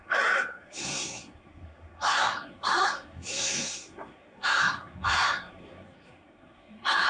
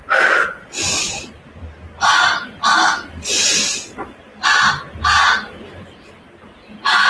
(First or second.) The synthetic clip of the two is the first